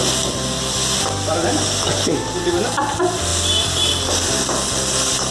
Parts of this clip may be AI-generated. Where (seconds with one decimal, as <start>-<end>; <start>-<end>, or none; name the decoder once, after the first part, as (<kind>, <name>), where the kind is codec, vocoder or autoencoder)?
3.3-3.9 (vocoder, BigVGAN v2)